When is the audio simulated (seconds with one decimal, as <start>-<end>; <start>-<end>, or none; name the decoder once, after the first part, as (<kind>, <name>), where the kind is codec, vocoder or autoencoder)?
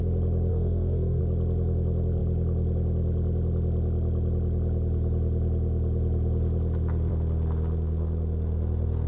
0.5-1.2 (codec, SNAC)